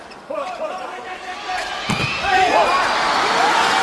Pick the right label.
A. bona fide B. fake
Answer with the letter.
A